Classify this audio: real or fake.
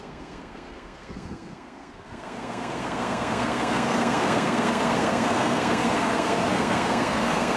fake